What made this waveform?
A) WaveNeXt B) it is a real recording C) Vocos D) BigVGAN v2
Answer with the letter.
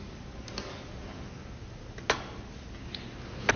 B